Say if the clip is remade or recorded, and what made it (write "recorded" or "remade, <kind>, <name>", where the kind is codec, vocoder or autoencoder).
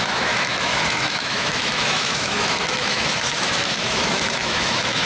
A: remade, autoencoder, DAC-VAE